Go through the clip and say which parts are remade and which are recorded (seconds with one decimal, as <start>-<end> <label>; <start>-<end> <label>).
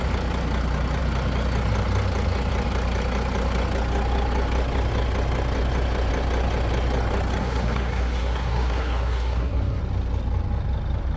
0.0-7.4 recorded; 7.4-9.8 remade; 9.8-11.2 recorded